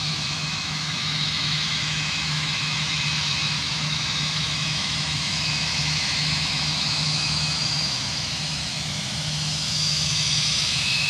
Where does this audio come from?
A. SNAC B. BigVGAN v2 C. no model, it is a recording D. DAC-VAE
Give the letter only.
D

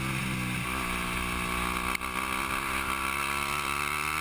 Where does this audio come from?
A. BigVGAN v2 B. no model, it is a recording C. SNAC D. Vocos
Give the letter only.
B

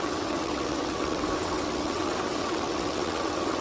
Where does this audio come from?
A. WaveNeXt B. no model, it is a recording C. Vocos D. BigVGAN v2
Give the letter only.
A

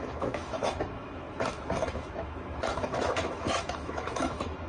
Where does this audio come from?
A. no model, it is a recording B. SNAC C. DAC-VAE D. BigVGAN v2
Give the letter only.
C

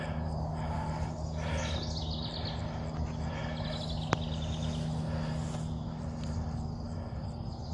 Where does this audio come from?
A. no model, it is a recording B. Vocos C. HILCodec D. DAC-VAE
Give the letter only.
A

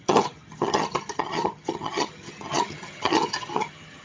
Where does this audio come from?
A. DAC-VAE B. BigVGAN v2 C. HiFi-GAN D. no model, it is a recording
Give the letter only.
C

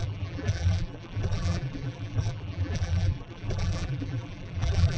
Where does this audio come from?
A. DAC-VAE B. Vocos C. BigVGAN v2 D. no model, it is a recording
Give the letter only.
C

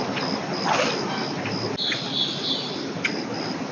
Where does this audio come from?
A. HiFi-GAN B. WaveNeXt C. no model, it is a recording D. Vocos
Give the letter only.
C